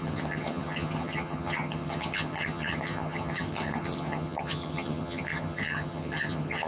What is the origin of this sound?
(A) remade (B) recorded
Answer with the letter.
A